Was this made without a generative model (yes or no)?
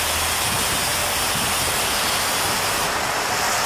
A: yes